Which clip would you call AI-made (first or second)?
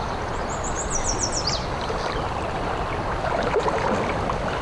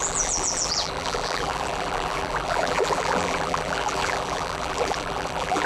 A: second